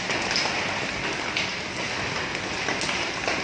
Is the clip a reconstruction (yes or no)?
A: no